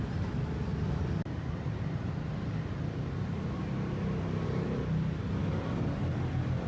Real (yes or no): yes